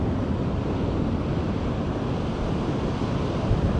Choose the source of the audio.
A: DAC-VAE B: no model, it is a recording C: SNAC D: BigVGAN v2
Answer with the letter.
D